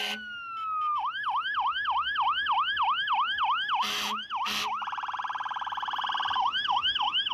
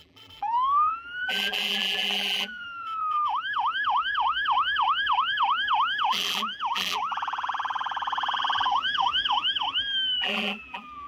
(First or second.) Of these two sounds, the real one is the first